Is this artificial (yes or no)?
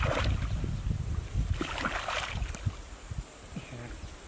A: no